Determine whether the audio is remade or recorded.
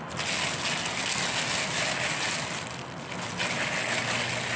recorded